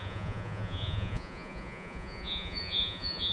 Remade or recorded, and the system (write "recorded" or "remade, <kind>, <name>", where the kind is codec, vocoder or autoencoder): remade, vocoder, Vocos